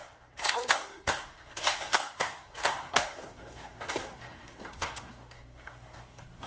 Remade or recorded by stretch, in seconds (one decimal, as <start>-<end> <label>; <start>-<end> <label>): 0.0-6.5 remade